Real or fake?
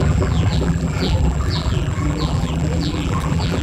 fake